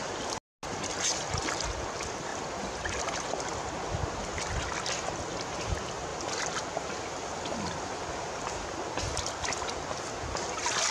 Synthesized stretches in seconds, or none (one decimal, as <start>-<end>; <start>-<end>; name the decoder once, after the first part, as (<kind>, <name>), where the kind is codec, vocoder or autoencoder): 2.3-3.7 (vocoder, BigVGAN v2); 6.1-6.6